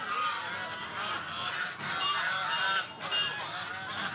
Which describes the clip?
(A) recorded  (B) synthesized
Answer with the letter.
A